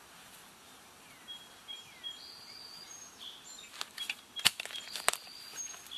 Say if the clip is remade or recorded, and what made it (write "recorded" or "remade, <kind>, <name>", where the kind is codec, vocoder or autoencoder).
recorded